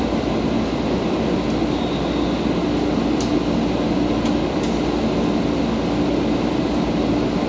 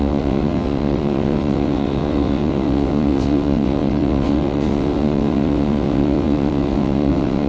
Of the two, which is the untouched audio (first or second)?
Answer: first